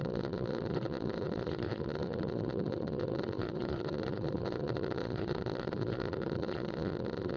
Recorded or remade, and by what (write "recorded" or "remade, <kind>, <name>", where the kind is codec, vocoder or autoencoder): remade, vocoder, Vocos